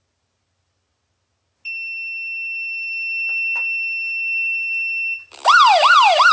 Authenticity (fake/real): real